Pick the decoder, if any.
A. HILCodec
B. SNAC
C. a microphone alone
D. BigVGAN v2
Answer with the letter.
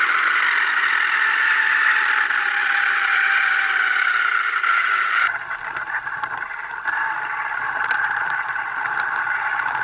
D